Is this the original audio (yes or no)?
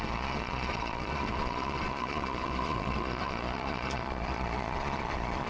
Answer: no